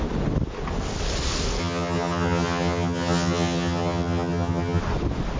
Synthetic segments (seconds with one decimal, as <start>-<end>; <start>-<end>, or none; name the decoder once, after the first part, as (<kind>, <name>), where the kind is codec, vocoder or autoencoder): 1.6-4.8 (vocoder, HiFi-GAN)